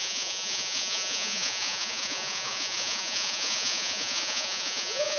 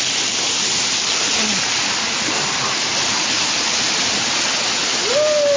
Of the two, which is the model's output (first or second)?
first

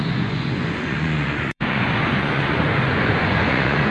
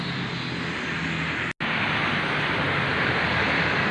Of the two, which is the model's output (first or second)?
first